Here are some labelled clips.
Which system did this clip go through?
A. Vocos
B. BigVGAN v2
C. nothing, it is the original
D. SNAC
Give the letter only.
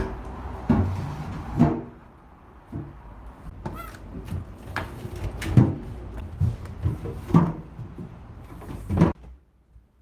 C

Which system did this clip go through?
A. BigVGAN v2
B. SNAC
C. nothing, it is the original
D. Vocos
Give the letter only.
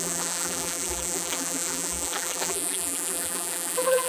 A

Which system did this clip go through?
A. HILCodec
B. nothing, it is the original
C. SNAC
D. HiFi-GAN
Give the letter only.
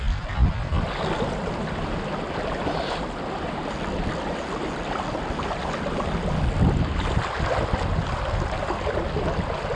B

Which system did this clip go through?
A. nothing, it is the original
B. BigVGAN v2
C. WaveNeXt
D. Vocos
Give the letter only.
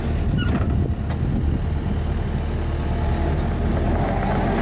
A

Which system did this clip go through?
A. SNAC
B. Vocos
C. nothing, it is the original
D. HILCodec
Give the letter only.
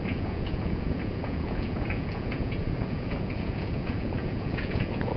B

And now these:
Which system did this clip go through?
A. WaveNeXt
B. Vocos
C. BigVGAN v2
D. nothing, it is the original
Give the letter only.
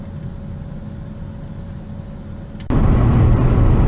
D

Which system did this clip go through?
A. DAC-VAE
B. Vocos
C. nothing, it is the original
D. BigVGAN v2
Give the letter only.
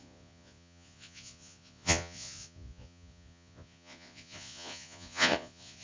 B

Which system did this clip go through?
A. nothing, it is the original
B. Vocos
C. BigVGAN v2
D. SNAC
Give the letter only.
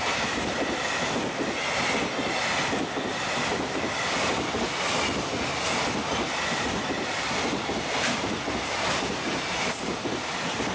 C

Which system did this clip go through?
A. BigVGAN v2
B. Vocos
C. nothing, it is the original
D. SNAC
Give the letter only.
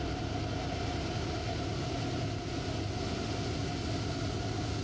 C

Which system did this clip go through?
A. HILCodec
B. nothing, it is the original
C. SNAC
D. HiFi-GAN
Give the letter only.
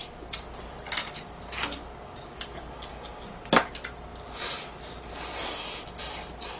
B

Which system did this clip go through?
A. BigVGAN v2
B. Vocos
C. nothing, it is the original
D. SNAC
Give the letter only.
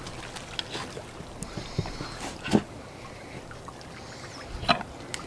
C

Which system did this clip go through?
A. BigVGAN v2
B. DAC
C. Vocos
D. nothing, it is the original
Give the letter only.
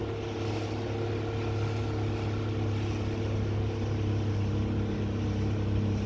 D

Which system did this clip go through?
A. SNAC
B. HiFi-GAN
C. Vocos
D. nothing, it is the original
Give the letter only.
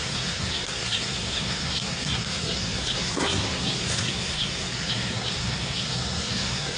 A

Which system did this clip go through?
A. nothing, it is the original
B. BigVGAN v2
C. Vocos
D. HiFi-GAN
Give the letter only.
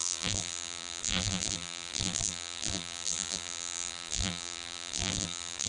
B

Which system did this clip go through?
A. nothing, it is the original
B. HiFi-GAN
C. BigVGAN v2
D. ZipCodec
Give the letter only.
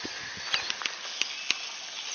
A